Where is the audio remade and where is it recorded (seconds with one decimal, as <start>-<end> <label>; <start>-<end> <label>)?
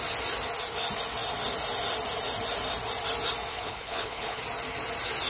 0.0-3.5 recorded; 3.5-4.4 remade; 4.4-5.3 recorded